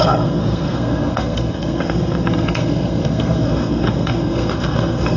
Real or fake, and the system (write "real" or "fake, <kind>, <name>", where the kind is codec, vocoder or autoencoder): fake, codec, SNAC